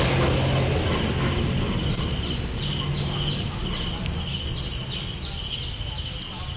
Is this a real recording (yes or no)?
yes